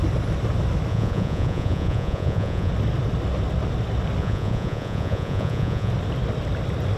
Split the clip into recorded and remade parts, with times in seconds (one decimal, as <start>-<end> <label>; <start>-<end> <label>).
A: 0.0-0.9 recorded; 0.9-2.7 remade; 2.7-4.2 recorded; 4.2-5.9 remade; 5.9-7.0 recorded